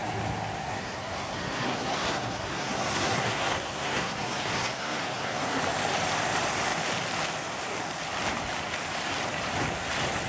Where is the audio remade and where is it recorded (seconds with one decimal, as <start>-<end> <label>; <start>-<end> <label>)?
0.0-0.6 recorded; 0.6-5.6 remade; 5.6-10.3 recorded